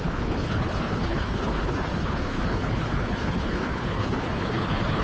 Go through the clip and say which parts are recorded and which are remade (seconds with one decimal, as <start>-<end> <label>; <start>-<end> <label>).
0.0-5.0 remade